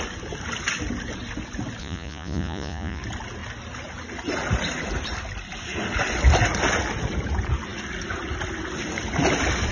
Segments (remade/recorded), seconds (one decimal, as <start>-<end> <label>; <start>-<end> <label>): 0.0-1.8 recorded; 1.8-3.0 remade; 3.0-9.7 recorded